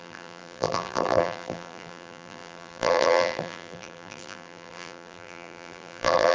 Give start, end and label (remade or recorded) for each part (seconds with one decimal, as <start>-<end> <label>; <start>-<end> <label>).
0.0-6.3 remade